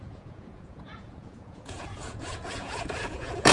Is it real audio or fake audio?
fake